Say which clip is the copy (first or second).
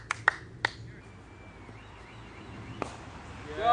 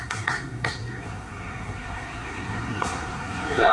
second